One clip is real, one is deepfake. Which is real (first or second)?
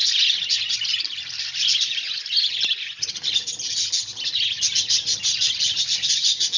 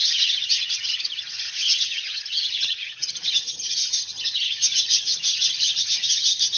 first